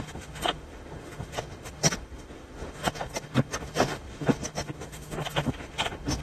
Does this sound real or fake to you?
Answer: fake